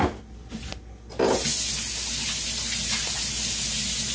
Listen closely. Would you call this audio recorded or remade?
recorded